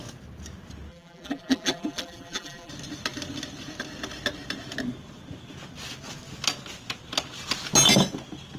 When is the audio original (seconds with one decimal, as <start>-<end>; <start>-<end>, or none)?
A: 0.0-0.9; 2.7-8.6